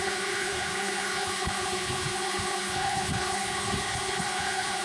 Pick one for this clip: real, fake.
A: fake